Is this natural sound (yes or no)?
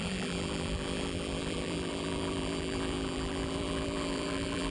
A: no